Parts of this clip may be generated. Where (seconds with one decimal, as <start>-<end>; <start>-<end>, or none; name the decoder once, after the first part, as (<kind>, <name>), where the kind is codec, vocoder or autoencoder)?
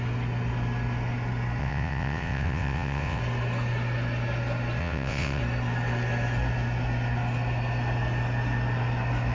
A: 1.6-3.2 (vocoder, WaveNeXt); 4.8-5.4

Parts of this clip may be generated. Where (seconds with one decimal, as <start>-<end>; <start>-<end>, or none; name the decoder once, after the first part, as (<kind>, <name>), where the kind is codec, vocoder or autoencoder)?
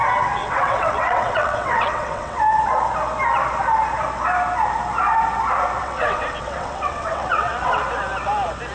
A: 0.4-2.4 (vocoder, WaveNeXt); 5.8-7.8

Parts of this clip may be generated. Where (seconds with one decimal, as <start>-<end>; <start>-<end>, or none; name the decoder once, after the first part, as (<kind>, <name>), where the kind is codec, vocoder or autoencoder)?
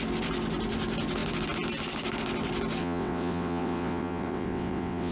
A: 2.8-5.1 (vocoder, WaveNeXt)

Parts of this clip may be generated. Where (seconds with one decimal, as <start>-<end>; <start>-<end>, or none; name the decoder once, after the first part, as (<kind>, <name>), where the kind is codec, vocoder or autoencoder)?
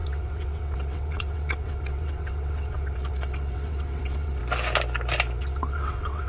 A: 0.0-4.4 (vocoder, WaveNeXt); 5.4-6.3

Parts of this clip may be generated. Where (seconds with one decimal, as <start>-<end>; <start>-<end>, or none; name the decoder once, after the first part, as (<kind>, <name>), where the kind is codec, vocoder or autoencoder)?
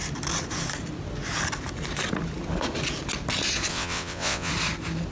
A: 3.7-4.5 (vocoder, WaveNeXt)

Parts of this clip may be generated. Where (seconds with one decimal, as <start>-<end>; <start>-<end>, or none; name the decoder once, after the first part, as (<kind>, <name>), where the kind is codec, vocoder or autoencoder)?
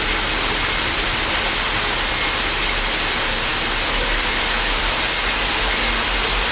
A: none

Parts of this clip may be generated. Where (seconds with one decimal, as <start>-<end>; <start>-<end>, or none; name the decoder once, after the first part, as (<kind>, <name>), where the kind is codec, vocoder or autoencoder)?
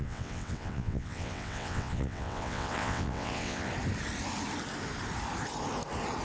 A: 0.0-3.7 (vocoder, WaveNeXt)